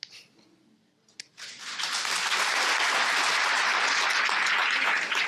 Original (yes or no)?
yes